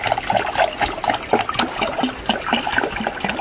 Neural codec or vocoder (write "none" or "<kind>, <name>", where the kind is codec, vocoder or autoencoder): none